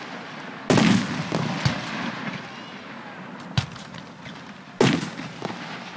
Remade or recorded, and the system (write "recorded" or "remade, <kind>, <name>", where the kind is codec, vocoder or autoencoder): recorded